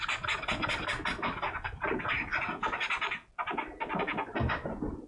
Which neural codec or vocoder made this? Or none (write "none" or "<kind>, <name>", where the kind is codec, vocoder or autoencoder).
none